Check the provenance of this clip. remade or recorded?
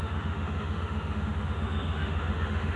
remade